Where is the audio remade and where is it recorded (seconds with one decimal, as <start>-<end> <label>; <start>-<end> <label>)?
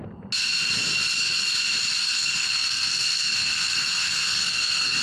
0.0-2.0 recorded; 2.0-5.0 remade